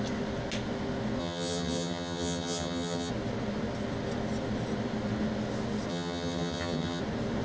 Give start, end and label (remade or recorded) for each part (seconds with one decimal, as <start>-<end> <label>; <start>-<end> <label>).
0.0-1.2 recorded; 1.2-3.1 remade; 3.1-5.9 recorded; 5.9-7.0 remade; 7.0-7.4 recorded